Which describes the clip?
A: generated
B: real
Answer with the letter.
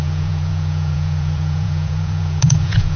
A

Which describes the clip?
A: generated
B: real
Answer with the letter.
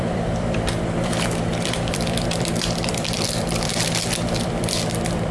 A